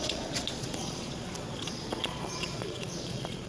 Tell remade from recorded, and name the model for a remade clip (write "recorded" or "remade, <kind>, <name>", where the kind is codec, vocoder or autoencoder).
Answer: remade, vocoder, Vocos